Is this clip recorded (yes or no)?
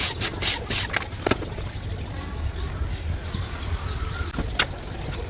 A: yes